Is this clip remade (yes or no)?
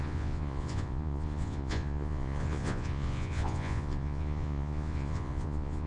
yes